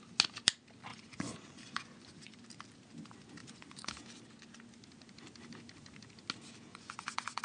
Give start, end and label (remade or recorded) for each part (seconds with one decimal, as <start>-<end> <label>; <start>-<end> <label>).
0.0-0.9 recorded; 0.9-2.4 remade; 2.4-3.4 recorded; 3.4-3.9 remade; 3.9-6.7 recorded; 6.7-7.4 remade